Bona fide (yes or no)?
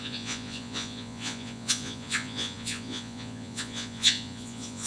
no